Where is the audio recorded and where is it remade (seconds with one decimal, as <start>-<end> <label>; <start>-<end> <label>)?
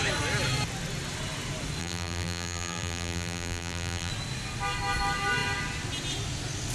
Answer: 0.0-1.8 recorded; 1.8-4.1 remade; 4.1-6.7 recorded